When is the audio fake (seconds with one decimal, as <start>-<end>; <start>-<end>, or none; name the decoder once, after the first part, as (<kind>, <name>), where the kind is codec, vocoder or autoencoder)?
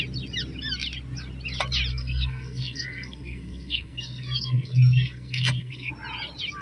1.9-5.9 (codec, SNAC)